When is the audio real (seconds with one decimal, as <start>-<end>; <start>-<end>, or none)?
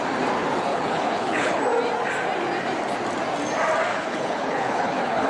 0.0-0.7; 1.6-3.9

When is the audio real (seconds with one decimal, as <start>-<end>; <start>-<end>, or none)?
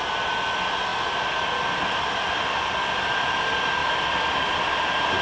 0.0-0.9; 3.4-3.8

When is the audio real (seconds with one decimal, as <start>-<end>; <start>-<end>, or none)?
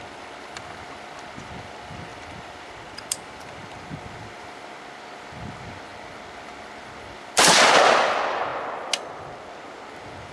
0.0-10.3